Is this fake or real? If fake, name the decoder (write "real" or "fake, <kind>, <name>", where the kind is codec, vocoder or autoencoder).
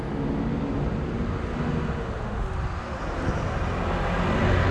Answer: real